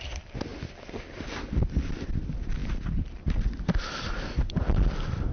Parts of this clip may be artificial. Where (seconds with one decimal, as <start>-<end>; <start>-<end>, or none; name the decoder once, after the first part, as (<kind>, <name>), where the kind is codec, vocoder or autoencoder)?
2.6-4.1 (vocoder, BigVGAN v2)